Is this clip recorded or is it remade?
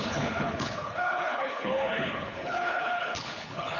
remade